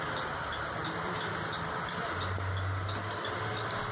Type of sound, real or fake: real